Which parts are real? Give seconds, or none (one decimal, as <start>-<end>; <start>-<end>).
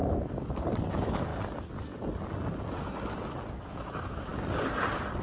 0.0-0.9; 1.3-3.5; 4.3-5.2